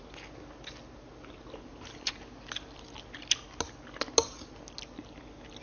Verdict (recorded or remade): recorded